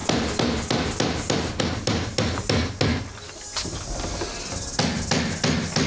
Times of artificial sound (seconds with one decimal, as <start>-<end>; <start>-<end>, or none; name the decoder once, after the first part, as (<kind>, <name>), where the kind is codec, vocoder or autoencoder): none